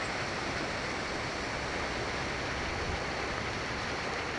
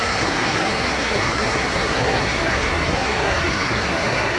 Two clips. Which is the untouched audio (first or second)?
first